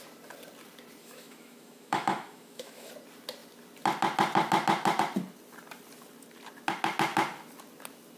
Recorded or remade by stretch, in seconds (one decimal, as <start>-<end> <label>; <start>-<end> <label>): 0.0-1.0 recorded; 1.0-2.9 remade; 2.9-8.2 recorded